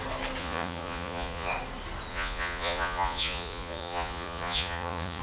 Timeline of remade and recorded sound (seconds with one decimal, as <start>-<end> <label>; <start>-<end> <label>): 0.0-0.4 recorded; 0.4-1.5 remade; 1.5-2.1 recorded; 2.1-5.2 remade